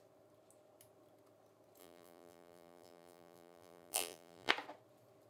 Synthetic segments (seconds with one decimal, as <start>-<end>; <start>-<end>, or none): 1.8-4.5